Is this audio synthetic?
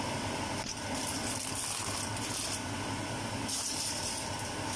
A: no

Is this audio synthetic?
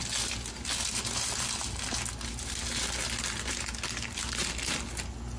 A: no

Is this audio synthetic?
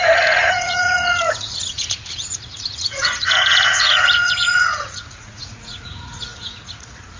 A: yes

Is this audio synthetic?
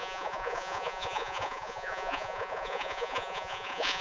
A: yes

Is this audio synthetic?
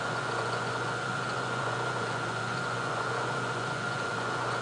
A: yes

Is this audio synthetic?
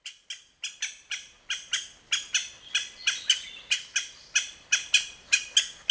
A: no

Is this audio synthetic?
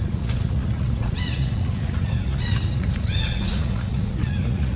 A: yes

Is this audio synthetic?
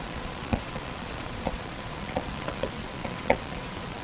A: yes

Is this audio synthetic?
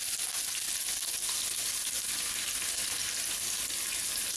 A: no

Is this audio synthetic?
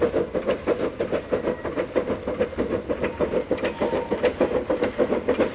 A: no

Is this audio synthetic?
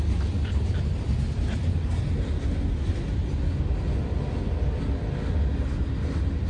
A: no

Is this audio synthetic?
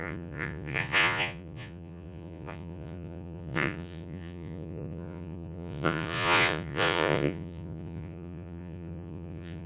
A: yes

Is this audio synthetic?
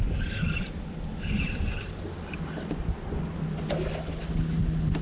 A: no